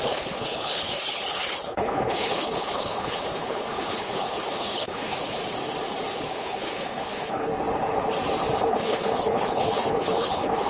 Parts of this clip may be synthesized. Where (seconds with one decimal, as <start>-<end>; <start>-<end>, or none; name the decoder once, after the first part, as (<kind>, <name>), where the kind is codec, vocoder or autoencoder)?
0.0-5.4 (codec, HILCodec); 6.1-7.5; 8.6-10.7